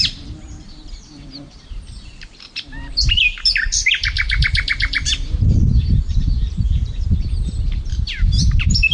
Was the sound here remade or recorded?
remade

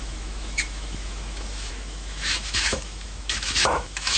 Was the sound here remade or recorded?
remade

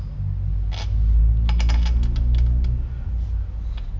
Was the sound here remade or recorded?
recorded